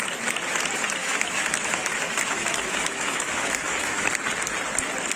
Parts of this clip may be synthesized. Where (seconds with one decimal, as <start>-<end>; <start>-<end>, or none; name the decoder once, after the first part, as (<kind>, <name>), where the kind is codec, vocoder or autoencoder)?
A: 1.0-4.1 (autoencoder, DAC-VAE)